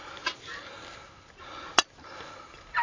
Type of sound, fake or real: real